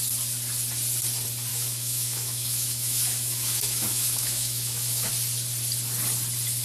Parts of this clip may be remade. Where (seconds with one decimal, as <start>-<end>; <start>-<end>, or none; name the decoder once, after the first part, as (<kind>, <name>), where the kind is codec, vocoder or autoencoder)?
1.5-5.1 (autoencoder, DAC-VAE)